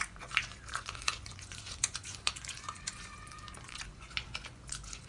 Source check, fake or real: fake